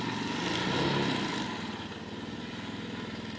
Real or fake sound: real